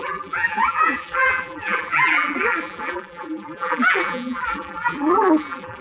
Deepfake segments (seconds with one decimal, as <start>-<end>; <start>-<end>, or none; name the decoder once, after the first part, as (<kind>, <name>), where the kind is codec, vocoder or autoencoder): 0.0-5.8 (vocoder, BigVGAN v2)